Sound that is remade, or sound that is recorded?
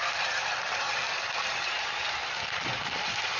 remade